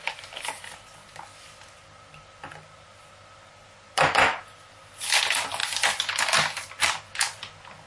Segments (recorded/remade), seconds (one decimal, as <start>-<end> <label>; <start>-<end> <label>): 0.0-7.9 recorded